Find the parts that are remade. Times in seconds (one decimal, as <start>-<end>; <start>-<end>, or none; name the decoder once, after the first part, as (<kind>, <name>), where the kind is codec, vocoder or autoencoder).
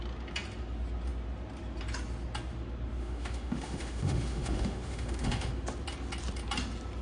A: 3.0-5.5 (autoencoder, DAC-VAE)